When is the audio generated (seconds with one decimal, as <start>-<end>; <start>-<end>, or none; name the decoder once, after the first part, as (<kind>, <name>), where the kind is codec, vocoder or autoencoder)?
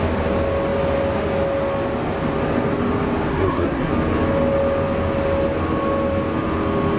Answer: 3.3-3.9 (codec, SNAC)